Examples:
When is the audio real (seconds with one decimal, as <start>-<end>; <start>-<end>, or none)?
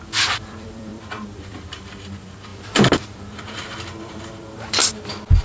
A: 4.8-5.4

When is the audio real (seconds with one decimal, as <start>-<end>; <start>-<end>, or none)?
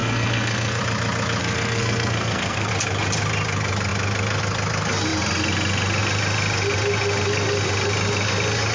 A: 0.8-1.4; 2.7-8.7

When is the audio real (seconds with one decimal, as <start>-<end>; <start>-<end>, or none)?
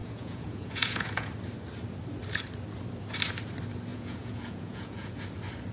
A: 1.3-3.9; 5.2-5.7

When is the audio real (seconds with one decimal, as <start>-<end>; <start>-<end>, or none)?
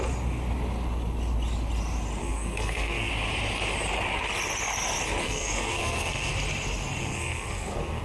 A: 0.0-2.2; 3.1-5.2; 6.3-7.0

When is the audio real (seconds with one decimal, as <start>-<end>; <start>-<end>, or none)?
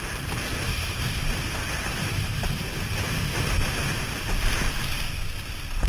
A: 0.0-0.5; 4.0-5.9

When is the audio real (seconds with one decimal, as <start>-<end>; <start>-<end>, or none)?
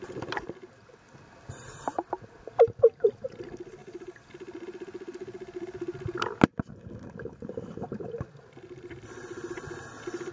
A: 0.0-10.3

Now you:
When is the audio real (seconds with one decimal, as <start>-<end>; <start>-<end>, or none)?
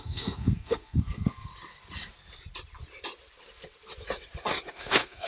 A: 1.5-4.7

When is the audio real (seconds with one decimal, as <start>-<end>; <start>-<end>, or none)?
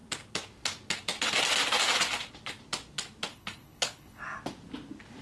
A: 0.0-3.3; 4.2-5.2